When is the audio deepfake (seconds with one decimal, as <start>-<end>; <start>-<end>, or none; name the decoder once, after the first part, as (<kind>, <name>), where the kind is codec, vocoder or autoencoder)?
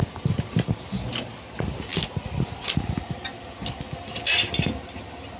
none